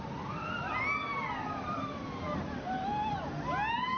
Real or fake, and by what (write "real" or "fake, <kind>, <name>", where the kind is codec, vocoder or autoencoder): real